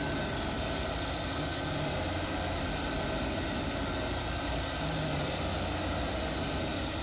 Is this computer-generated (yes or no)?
no